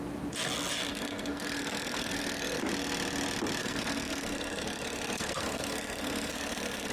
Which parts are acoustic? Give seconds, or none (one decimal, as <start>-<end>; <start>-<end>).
0.0-0.9; 2.6-3.6